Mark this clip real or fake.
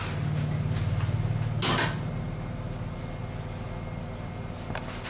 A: real